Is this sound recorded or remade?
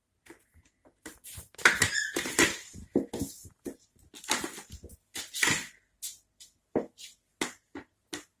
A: recorded